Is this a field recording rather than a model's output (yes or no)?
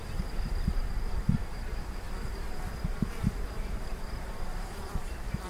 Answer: no